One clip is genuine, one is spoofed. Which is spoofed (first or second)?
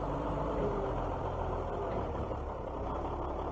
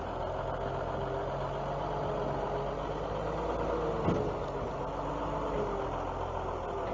first